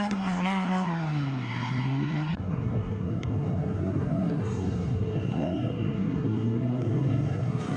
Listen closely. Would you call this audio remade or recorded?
remade